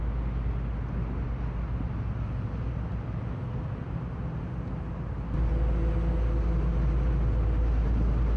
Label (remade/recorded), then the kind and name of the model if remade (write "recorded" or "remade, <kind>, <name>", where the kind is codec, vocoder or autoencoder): recorded